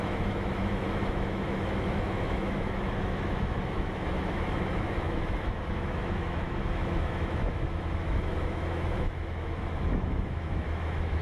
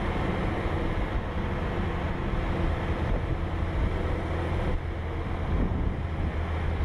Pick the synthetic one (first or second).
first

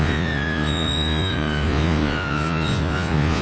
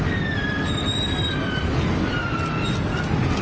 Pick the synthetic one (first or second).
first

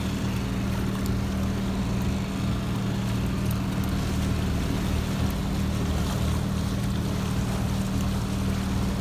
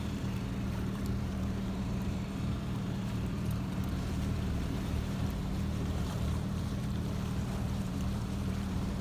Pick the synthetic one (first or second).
second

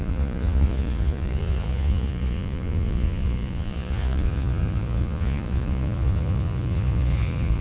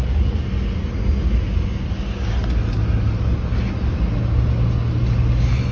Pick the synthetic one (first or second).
first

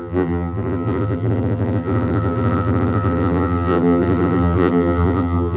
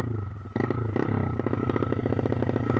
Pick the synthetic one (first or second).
first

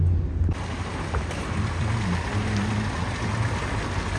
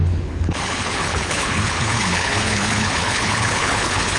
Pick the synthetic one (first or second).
second